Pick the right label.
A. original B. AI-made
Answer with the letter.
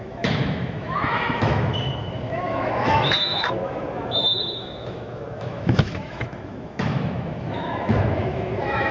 B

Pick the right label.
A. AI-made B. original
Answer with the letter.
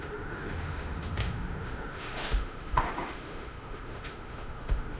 A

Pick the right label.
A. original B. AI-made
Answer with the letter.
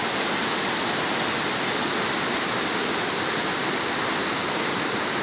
A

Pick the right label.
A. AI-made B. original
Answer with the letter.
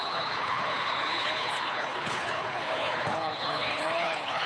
A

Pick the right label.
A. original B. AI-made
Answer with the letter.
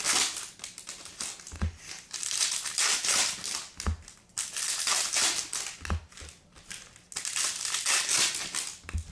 A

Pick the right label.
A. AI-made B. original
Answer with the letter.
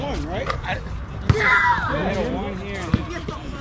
B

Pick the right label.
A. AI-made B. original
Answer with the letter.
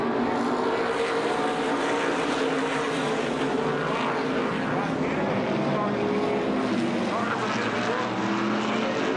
B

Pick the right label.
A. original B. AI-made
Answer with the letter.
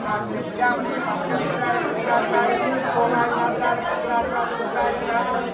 A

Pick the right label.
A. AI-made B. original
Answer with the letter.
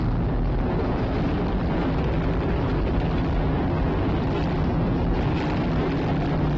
B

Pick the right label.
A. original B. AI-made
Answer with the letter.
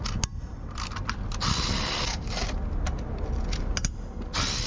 A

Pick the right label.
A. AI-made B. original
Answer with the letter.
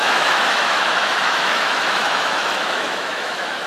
A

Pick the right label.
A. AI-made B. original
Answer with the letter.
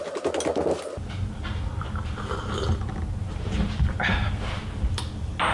B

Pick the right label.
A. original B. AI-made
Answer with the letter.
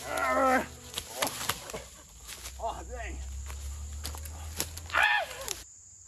A